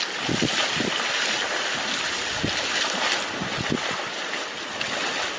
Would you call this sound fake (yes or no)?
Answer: no